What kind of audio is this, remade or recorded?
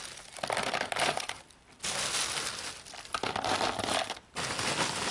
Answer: recorded